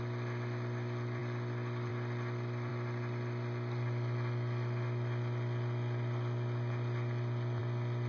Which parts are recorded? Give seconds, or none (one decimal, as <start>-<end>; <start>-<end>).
0.0-8.1